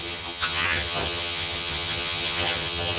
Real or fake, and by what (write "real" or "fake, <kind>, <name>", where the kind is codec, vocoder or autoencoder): fake, vocoder, HiFi-GAN